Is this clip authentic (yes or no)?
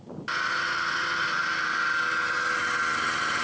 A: yes